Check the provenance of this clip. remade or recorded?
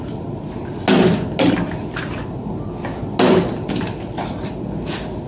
recorded